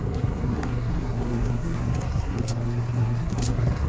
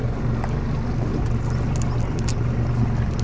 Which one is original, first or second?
second